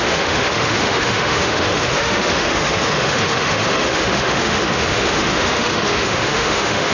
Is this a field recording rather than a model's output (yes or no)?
no